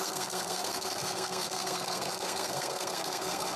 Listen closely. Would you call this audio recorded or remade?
remade